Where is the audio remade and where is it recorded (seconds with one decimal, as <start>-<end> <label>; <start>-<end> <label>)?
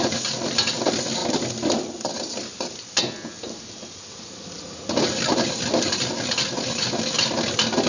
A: 0.0-7.9 recorded